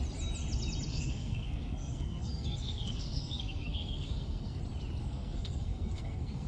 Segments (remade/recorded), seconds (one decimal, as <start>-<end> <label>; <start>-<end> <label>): 0.0-0.9 recorded; 0.9-4.6 remade; 4.6-5.0 recorded; 5.0-6.5 remade